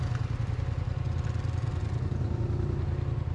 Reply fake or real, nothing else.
real